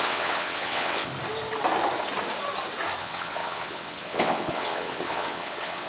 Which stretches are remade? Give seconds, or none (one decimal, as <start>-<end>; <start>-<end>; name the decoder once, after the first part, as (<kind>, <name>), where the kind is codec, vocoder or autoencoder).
0.0-1.1 (vocoder, WaveNeXt); 3.0-5.9